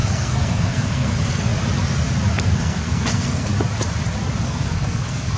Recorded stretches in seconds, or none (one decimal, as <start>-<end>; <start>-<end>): 1.5-2.3; 3.5-4.4